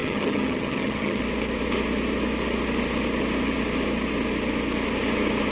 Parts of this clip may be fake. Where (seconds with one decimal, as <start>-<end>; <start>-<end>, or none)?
0.0-1.2